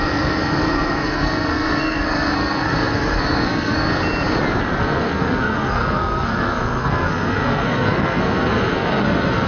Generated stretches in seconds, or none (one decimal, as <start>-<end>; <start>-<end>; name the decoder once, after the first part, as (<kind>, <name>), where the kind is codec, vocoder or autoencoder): 0.0-3.9 (codec, SNAC); 4.8-9.5